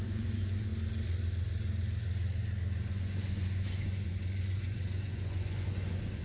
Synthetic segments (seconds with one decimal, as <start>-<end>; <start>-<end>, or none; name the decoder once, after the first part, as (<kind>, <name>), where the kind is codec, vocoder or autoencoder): 0.0-0.7 (vocoder, Vocos); 2.9-6.2